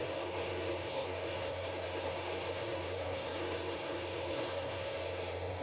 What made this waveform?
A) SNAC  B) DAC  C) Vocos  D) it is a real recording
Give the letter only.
A